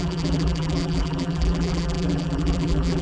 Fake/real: fake